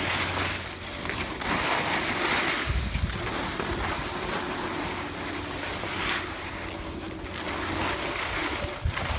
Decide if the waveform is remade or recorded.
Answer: recorded